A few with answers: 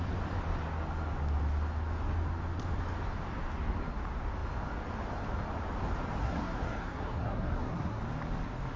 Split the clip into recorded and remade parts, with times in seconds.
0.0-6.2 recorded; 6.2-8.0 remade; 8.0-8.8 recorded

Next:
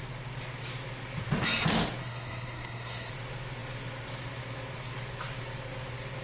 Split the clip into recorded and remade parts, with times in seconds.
0.0-2.0 recorded; 2.0-3.1 remade; 3.1-6.2 recorded